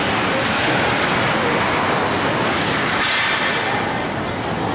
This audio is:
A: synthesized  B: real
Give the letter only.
B